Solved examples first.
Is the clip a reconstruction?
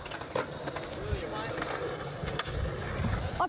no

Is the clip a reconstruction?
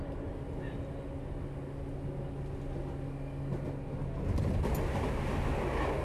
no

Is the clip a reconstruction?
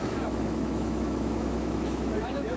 yes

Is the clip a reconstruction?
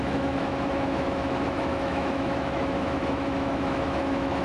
yes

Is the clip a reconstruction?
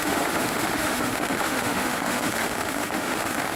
yes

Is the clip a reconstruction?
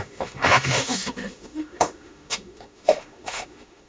yes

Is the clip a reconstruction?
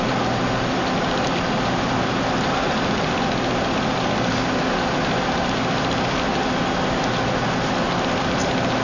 no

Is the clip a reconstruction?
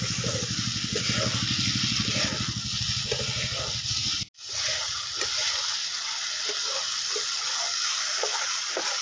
no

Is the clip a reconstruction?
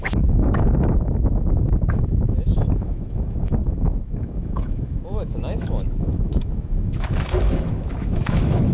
yes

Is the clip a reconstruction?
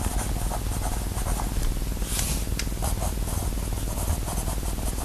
no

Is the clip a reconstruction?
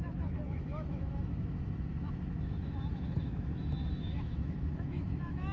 yes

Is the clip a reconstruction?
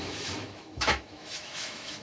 yes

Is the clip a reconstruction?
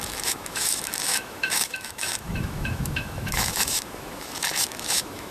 yes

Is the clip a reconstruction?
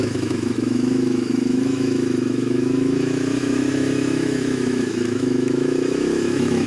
yes